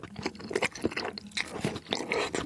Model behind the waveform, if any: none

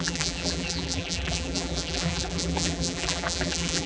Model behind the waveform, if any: vocoder, BigVGAN v2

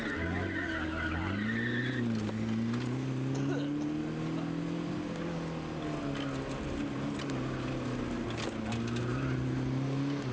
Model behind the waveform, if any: none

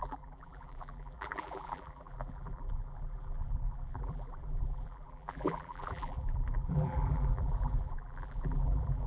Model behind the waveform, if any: vocoder, BigVGAN v2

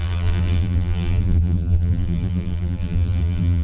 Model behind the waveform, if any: vocoder, BigVGAN v2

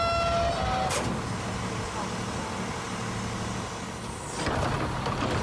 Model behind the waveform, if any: none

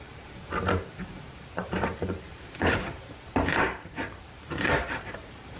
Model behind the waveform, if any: vocoder, BigVGAN v2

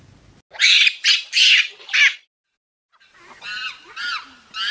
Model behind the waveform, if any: none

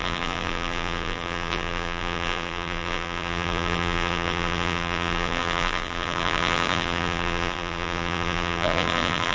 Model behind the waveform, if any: vocoder, BigVGAN v2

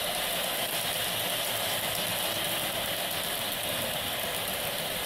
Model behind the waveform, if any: none